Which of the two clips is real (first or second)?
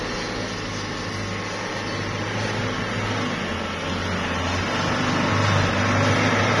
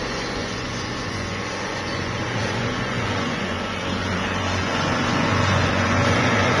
first